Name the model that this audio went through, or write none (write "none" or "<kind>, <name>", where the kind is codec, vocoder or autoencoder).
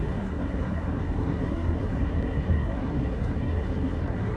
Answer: codec, SNAC